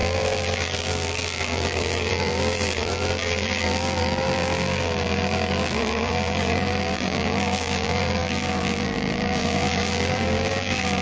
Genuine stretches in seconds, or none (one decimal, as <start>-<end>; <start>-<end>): none